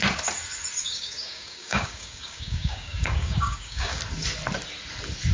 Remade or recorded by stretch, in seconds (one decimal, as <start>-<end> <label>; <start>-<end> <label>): 0.0-0.8 recorded; 0.8-4.0 remade; 4.0-5.3 recorded